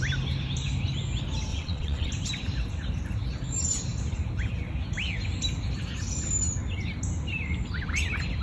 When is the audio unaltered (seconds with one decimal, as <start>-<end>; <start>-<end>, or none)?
0.0-1.5; 2.1-8.4